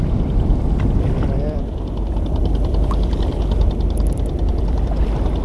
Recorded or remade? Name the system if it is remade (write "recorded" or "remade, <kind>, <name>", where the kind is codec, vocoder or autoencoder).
remade, vocoder, BigVGAN v2